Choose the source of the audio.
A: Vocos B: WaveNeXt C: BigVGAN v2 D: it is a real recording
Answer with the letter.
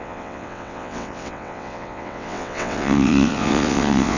B